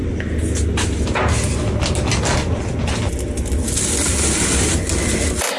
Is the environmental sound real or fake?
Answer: real